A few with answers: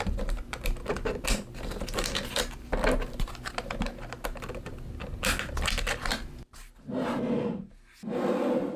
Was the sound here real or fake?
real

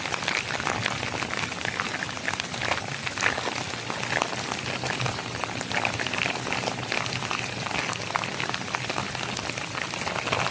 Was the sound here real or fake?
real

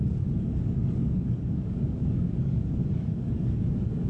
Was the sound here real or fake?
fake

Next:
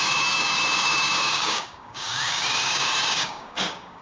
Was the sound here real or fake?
fake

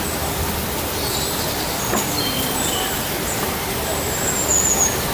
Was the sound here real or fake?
real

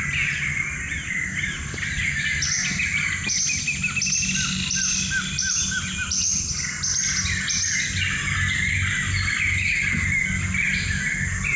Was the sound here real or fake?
real